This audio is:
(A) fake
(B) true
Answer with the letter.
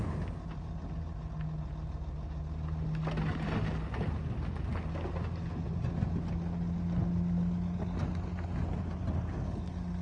B